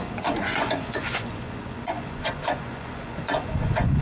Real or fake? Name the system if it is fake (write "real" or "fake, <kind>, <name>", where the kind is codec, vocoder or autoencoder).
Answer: fake, vocoder, Vocos